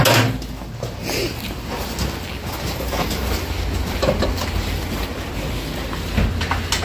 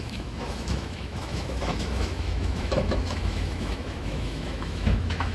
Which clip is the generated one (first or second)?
second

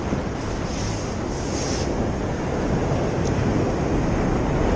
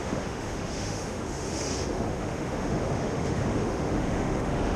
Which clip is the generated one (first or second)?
second